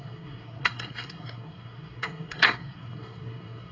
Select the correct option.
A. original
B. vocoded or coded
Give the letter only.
B